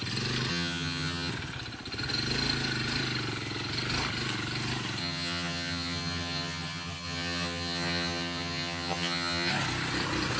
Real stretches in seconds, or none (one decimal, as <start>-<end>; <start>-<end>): 0.0-0.5; 1.3-5.0; 9.5-10.4

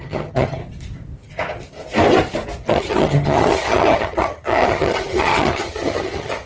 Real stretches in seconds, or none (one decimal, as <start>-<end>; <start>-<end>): 0.6-2.7

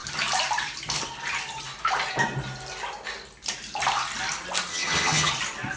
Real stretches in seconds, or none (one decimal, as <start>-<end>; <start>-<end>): 0.0-4.7; 5.3-5.8

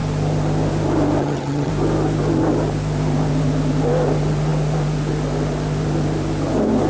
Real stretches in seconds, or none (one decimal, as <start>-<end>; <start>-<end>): 0.0-1.2; 1.7-6.9

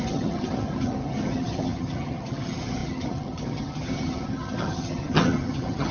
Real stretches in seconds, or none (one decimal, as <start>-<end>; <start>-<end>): none

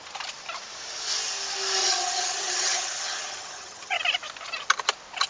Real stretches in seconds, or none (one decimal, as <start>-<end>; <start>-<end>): 0.0-1.8; 4.0-5.3